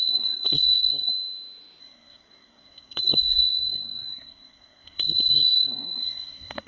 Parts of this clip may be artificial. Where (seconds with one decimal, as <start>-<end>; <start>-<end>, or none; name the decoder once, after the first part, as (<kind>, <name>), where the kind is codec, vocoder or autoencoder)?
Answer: 0.0-1.1 (codec, SNAC); 1.8-6.7